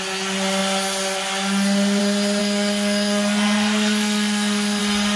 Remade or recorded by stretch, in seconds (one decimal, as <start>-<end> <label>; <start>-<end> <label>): 0.0-2.4 recorded; 2.4-4.8 remade; 4.8-5.2 recorded